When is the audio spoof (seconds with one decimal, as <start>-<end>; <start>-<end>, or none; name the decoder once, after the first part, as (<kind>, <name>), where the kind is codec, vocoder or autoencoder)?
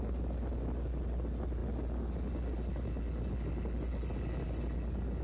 none